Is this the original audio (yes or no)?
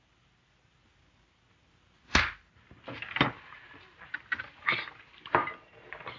yes